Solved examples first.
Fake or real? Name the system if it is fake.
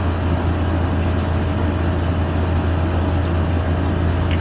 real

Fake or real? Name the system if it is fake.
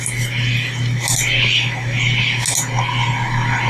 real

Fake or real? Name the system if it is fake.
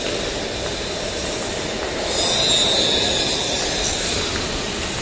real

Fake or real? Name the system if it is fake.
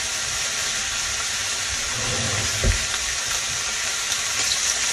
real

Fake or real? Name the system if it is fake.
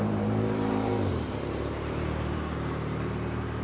fake, vocoder, BigVGAN v2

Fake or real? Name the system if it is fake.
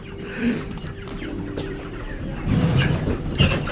fake, vocoder, BigVGAN v2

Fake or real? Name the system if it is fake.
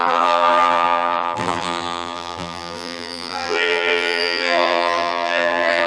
fake, vocoder, BigVGAN v2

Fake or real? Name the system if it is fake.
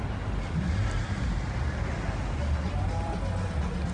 real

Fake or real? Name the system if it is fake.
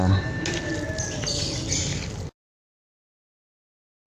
real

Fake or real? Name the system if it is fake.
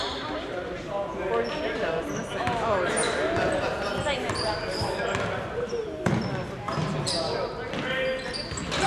real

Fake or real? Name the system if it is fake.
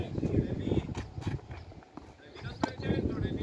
real